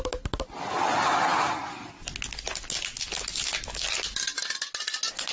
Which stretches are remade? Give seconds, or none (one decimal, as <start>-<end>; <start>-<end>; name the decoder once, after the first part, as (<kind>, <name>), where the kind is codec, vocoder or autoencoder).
none